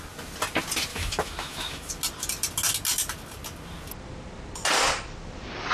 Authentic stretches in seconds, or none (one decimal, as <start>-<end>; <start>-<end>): 0.0-0.9; 1.9-5.7